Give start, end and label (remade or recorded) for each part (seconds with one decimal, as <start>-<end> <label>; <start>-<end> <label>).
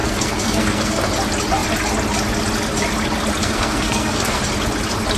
0.0-1.1 remade; 1.1-3.4 recorded; 3.4-4.4 remade; 4.4-5.2 recorded